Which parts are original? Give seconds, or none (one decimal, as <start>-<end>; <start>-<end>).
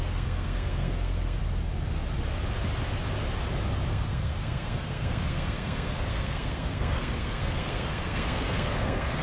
1.4-3.9